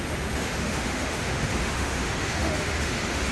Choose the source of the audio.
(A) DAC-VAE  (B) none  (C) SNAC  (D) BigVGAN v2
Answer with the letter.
A